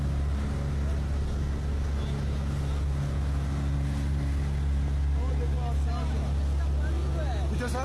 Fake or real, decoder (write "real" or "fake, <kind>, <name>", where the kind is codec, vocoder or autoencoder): real